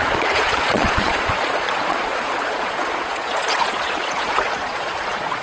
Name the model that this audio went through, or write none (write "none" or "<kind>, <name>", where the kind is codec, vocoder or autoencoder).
vocoder, Vocos